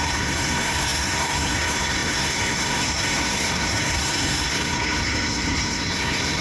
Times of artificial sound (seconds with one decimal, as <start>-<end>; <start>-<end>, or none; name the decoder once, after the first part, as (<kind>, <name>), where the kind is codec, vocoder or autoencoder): 0.0-6.4 (codec, SNAC)